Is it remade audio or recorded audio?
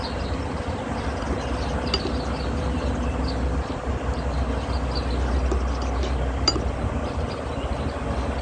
recorded